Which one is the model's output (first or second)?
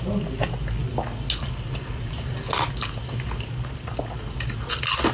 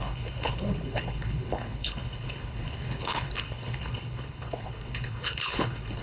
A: second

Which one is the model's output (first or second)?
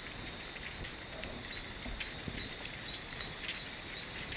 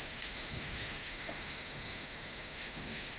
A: second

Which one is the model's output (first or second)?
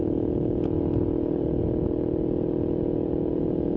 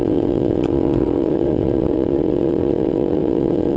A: second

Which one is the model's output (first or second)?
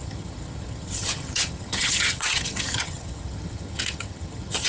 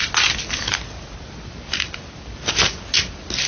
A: first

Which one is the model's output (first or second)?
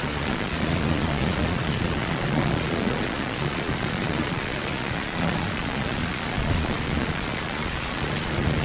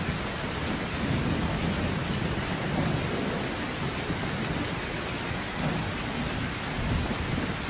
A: first